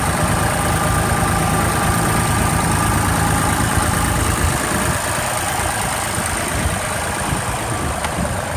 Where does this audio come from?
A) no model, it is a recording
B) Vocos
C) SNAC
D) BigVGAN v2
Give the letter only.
D